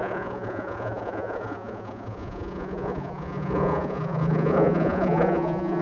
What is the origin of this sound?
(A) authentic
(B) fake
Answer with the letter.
B